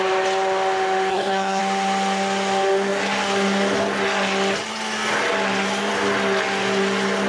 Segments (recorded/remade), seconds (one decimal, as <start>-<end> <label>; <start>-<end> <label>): 0.0-1.1 recorded; 1.1-1.6 remade; 1.6-7.3 recorded